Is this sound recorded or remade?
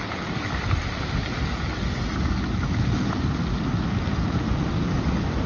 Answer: recorded